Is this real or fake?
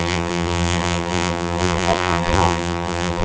fake